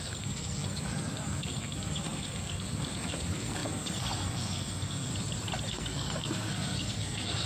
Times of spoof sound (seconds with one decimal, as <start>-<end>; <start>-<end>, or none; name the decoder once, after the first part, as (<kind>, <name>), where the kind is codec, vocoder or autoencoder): 0.0-5.1 (codec, SNAC); 5.7-7.5